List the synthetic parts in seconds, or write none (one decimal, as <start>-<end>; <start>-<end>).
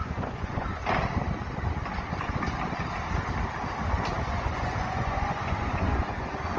0.0-0.8; 4.2-6.6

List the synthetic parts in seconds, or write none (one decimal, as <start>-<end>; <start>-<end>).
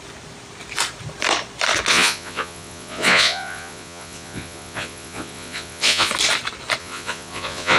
1.9-6.1; 6.8-7.8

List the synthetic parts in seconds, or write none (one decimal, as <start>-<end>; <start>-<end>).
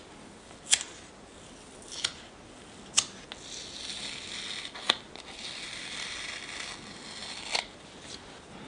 none